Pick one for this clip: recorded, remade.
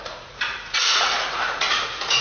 remade